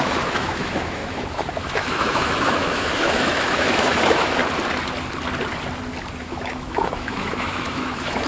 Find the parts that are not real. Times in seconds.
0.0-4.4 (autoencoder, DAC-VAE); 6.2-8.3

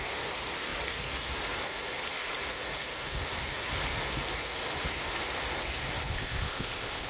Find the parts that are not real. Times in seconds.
6.1-7.1 (codec, ZipCodec)

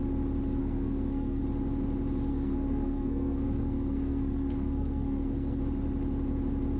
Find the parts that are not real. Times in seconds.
0.6-1.4 (codec, SNAC); 2.3-5.6

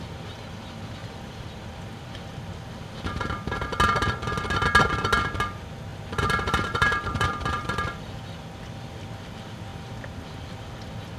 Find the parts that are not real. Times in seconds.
1.0-1.9 (vocoder, BigVGAN v2); 5.9-8.2

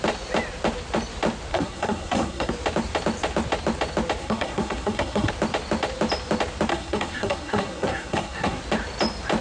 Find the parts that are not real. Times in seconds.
1.5-2.5 (codec, SNAC); 4.2-5.3; 6.7-8.6

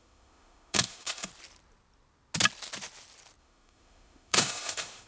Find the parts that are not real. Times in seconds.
0.0-1.3 (autoencoder, DAC-VAE); 3.4-5.1

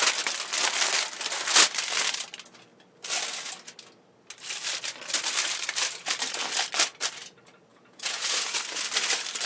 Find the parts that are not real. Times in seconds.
7.7-8.6 (vocoder, Vocos)

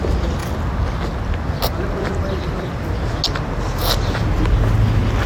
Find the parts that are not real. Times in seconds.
none